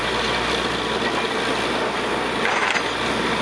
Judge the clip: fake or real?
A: real